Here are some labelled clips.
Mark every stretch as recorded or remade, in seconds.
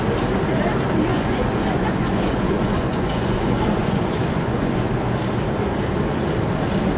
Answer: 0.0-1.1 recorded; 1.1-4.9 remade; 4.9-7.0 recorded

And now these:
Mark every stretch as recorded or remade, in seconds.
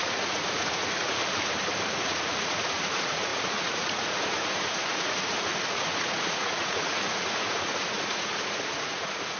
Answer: 0.0-1.2 remade; 1.2-1.9 recorded; 1.9-9.4 remade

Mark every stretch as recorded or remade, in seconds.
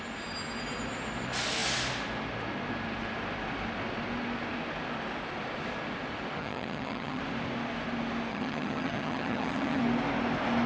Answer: 0.0-6.4 recorded; 6.4-7.2 remade; 7.2-8.3 recorded; 8.3-9.8 remade; 9.8-10.7 recorded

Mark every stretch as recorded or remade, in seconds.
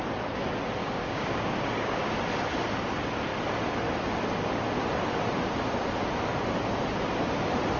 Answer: 0.0-0.8 recorded; 0.8-2.1 remade; 2.1-7.8 recorded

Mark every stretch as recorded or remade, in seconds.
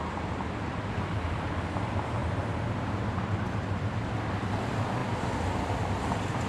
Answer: 0.0-2.2 recorded; 2.2-3.2 remade; 3.2-6.5 recorded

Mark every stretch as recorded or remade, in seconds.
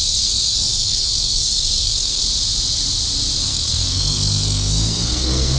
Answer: 0.0-2.2 remade; 2.2-3.4 recorded; 3.4-5.6 remade